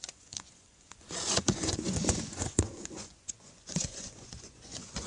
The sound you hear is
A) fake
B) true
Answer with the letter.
A